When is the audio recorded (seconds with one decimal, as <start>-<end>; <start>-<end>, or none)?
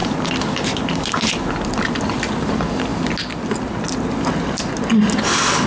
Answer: 0.0-5.7